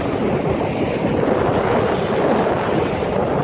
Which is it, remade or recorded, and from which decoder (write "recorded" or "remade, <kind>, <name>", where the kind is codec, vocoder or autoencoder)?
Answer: recorded